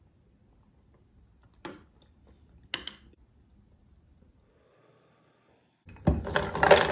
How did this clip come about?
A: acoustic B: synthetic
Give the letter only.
A